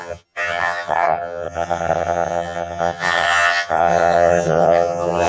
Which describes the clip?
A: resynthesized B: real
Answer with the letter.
A